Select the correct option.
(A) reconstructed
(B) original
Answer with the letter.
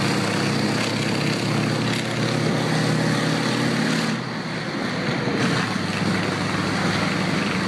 B